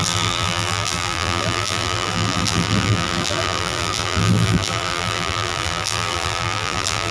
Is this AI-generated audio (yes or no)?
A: yes